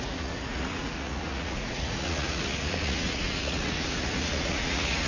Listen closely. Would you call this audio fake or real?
fake